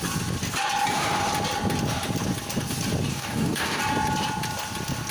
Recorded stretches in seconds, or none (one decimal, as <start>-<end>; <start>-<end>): 0.0-3.1; 3.8-5.1